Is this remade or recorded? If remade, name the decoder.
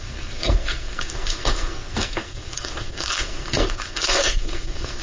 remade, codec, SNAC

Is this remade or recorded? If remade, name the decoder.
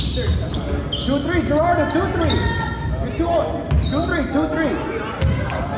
recorded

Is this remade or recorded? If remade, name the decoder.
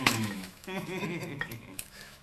remade, autoencoder, DAC-VAE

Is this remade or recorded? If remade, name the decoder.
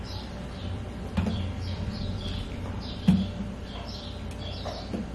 remade, vocoder, BigVGAN v2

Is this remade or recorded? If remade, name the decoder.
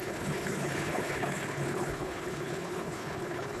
remade, codec, HILCodec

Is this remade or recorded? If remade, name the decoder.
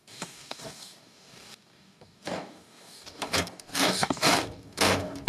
remade, codec, DAC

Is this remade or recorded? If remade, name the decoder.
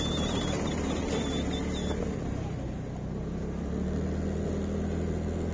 recorded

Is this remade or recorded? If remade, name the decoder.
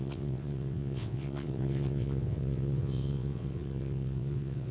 remade, vocoder, WaveNeXt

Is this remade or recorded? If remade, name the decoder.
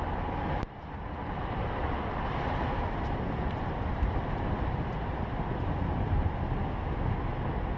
recorded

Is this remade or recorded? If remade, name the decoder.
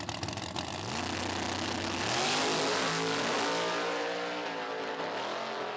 recorded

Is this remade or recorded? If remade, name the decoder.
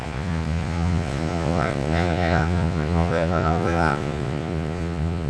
remade, vocoder, Vocos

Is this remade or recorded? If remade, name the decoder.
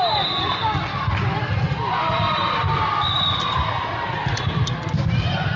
recorded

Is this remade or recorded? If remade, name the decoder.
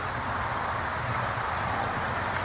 recorded